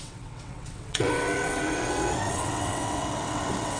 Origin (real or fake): fake